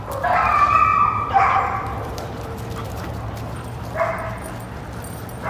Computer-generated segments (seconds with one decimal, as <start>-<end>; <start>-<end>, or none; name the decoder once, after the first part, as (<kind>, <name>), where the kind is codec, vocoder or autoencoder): 0.9-3.8 (vocoder, BigVGAN v2)